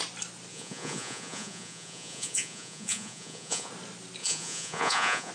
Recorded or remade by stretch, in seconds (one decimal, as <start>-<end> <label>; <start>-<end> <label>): 0.0-0.5 recorded; 0.5-3.7 remade; 3.7-4.2 recorded; 4.2-5.3 remade